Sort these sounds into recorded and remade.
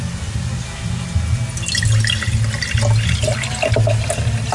recorded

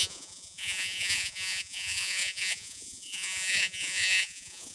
remade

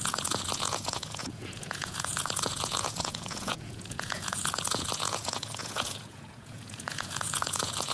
remade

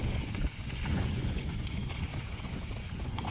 remade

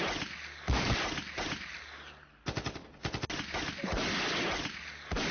recorded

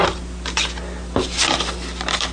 recorded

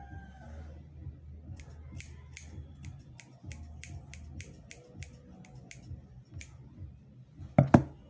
recorded